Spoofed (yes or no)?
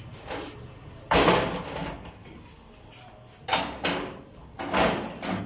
no